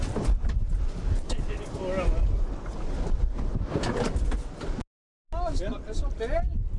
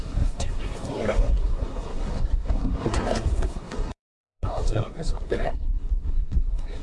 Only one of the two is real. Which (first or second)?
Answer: first